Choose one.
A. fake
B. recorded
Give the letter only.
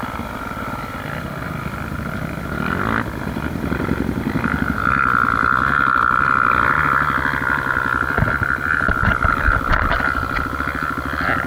B